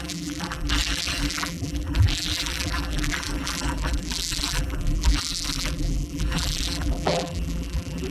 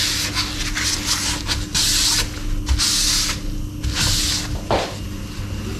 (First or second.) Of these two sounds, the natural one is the second